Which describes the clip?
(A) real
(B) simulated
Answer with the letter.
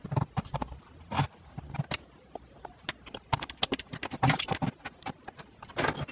A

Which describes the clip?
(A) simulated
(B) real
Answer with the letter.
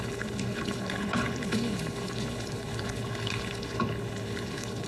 A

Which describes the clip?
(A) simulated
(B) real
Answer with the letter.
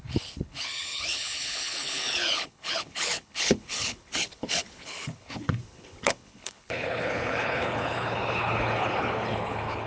A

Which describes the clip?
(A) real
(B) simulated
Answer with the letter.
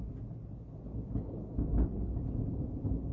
A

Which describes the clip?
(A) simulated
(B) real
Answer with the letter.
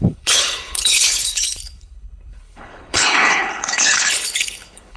A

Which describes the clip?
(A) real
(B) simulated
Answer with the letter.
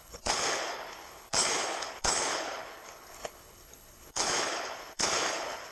B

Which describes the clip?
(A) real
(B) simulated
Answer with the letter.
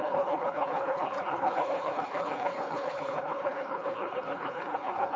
B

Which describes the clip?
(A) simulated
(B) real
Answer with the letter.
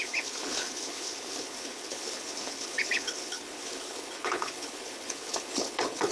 A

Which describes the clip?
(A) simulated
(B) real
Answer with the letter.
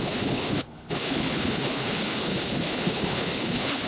A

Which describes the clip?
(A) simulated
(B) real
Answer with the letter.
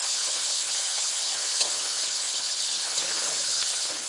A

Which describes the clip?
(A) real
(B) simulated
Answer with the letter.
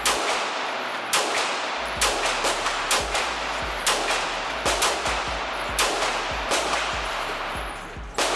A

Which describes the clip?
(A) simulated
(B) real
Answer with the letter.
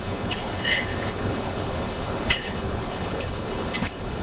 A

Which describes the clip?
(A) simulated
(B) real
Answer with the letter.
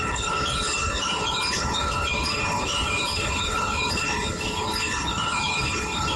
A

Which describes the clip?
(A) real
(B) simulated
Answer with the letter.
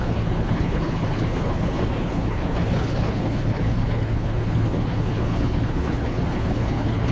B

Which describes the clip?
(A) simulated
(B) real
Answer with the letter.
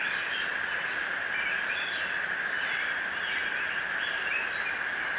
B